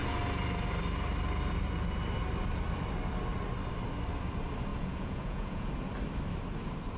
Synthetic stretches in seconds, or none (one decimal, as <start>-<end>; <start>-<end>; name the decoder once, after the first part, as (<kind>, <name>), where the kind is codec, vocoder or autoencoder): 4.7-5.7 (vocoder, Vocos)